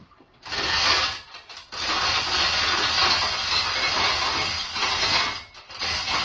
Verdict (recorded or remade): recorded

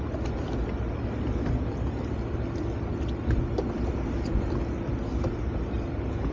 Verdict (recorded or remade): recorded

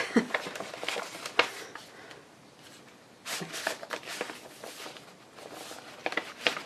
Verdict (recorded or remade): recorded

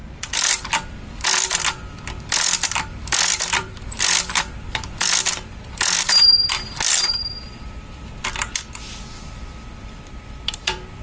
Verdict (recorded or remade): remade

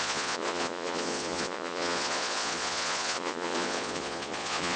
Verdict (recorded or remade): remade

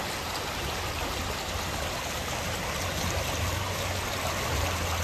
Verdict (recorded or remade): recorded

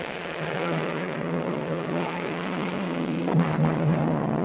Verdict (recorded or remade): remade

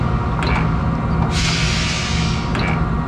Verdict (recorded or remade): recorded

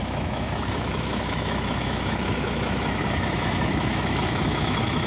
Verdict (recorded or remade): remade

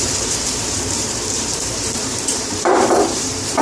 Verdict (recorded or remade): remade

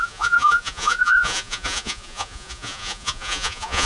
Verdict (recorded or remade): remade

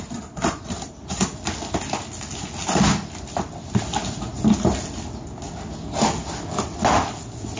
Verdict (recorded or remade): recorded